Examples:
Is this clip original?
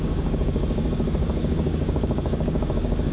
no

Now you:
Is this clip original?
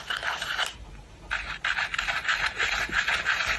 no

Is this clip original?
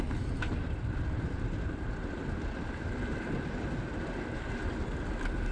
yes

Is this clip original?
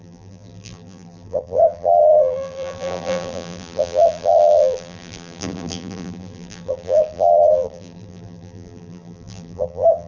no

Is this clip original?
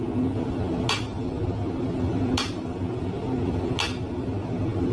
yes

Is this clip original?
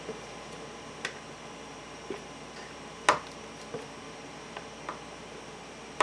yes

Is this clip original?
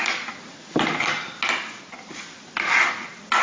yes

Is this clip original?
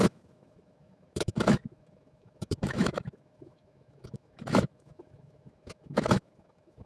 no